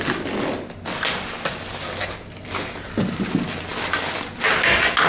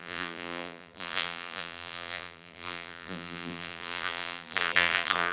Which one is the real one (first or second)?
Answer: first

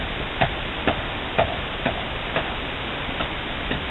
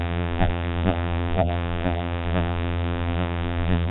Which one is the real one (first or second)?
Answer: first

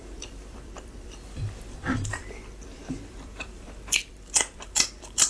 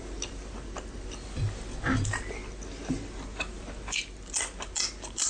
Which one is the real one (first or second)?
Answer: second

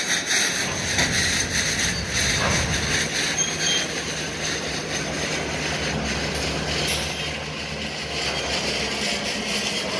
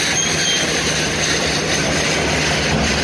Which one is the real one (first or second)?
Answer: first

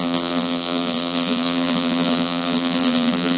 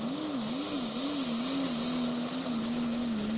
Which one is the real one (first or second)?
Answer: second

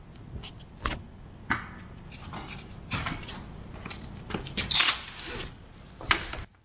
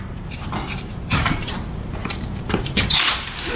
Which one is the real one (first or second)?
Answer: first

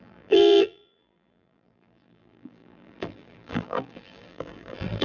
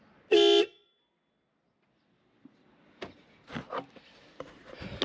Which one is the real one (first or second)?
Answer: second